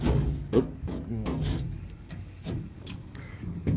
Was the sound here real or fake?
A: fake